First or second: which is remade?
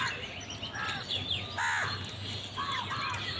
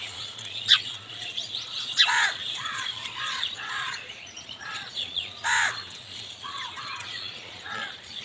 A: second